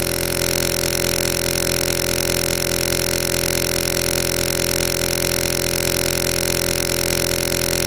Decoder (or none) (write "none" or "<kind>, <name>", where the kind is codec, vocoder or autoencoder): none